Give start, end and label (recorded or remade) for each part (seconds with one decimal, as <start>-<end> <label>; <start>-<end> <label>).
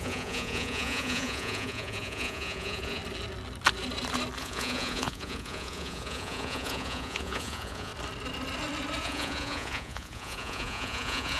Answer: 0.0-3.0 remade; 3.0-4.4 recorded; 4.4-7.9 remade; 7.9-9.0 recorded; 9.0-11.4 remade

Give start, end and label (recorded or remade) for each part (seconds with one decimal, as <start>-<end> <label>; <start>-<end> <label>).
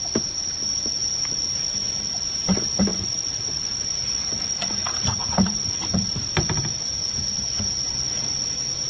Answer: 0.0-2.9 recorded; 2.9-3.8 remade; 3.8-4.2 recorded; 4.2-6.3 remade; 6.3-8.9 recorded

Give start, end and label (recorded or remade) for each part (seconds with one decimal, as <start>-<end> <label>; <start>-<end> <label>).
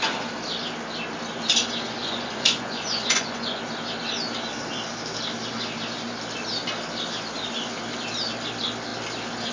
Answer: 0.0-2.0 recorded; 2.0-3.6 remade; 3.6-9.5 recorded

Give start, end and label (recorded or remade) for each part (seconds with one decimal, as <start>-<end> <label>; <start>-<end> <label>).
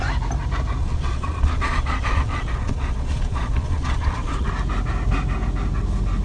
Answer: 0.0-0.8 recorded; 0.8-4.5 remade; 4.5-6.2 recorded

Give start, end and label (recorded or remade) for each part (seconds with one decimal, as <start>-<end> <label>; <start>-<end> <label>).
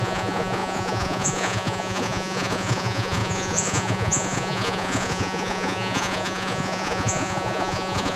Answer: 0.0-8.2 remade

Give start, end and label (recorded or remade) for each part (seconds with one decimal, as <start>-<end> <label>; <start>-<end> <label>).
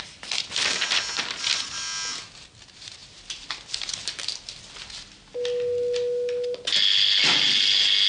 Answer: 0.0-8.1 recorded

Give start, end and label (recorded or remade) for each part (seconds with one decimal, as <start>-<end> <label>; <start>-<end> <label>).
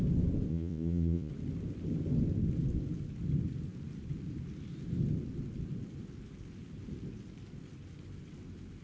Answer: 0.0-0.5 recorded; 0.5-1.3 remade; 1.3-8.8 recorded